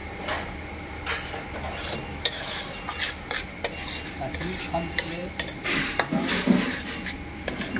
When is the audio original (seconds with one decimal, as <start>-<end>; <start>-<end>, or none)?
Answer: 0.0-2.1; 2.6-7.8